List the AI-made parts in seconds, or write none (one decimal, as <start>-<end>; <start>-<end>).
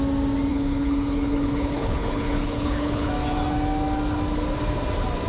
0.5-3.1